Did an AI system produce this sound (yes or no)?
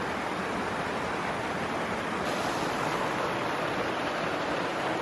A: no